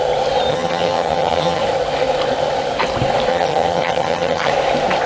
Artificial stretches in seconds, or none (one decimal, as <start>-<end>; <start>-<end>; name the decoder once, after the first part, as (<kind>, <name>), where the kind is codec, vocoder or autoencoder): 0.5-1.6 (vocoder, HiFi-GAN); 3.3-4.5